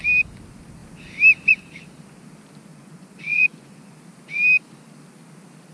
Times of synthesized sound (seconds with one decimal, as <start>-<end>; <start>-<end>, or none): 2.7-4.0